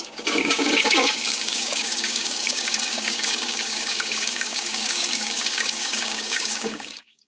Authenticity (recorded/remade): remade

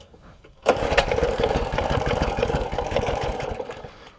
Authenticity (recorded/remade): remade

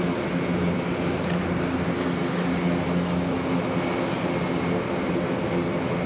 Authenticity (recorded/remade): recorded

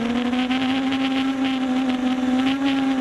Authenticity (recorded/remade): recorded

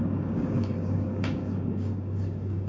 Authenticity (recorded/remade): remade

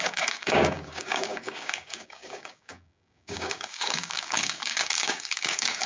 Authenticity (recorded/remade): remade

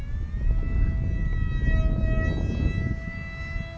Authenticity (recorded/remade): recorded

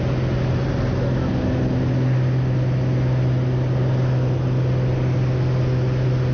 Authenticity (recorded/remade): recorded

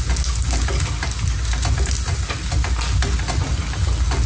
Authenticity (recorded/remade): recorded